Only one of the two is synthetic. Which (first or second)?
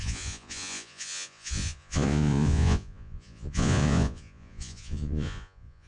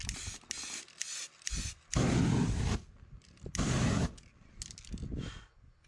first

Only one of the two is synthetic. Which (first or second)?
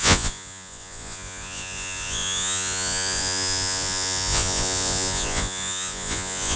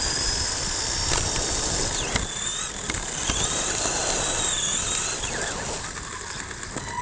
first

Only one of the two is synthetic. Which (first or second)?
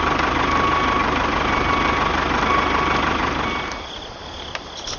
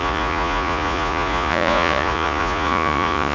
second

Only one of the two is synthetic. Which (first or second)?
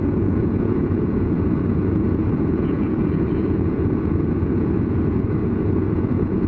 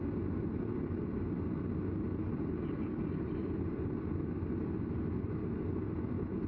first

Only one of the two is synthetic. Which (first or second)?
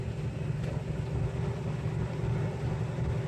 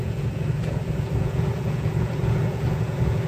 second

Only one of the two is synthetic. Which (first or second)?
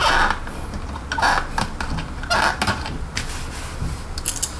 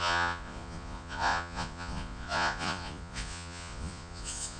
second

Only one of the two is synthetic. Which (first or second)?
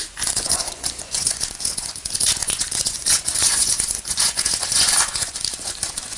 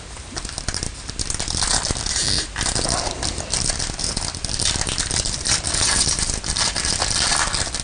first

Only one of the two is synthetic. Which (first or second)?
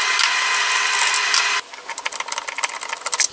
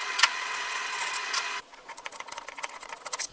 second